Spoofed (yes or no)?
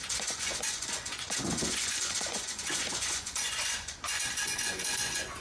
yes